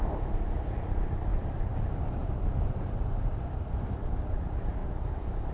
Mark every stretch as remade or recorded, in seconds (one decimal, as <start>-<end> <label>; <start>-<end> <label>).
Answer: 0.0-1.3 recorded; 1.3-4.1 remade; 4.1-4.8 recorded; 4.8-5.5 remade